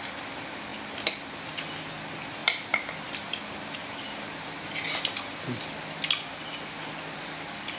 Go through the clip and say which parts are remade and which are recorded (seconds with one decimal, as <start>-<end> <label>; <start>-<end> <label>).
0.0-2.4 recorded; 2.4-3.4 remade; 3.4-7.8 recorded